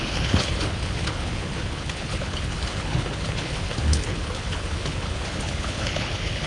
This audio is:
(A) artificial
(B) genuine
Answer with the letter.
A